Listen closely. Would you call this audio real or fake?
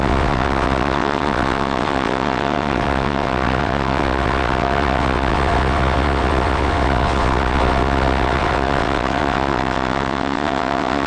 fake